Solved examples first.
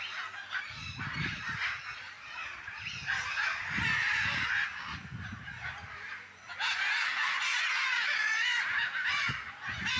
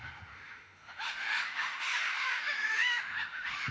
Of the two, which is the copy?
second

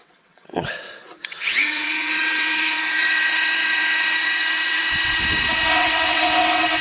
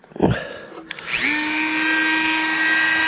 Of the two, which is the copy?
first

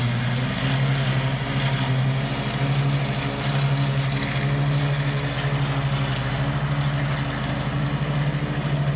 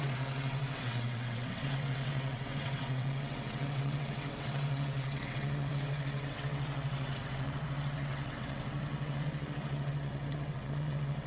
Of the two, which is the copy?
second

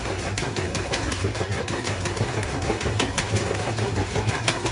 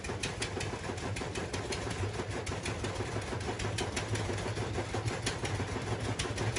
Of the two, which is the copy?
first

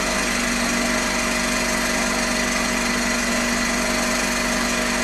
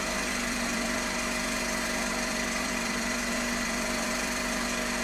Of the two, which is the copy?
second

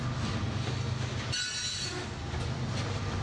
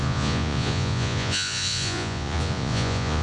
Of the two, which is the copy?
second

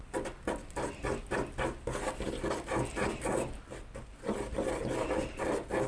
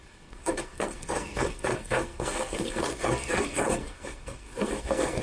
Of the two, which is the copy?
second